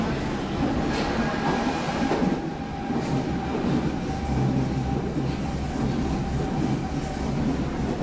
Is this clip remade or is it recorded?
recorded